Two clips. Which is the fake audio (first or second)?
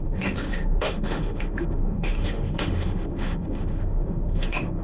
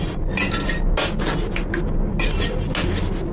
first